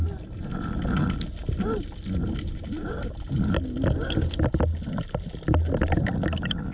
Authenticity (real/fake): real